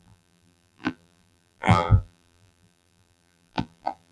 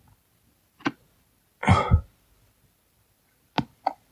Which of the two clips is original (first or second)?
second